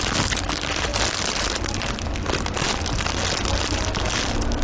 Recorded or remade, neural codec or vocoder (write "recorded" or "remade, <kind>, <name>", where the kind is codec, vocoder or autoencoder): recorded